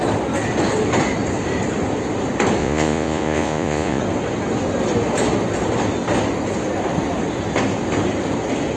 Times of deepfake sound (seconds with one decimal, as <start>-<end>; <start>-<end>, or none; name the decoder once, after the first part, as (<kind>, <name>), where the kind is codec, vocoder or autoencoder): 2.6-4.0 (vocoder, Vocos)